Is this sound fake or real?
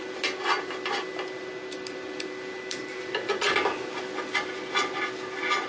real